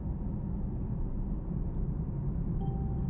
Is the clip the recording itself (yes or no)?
yes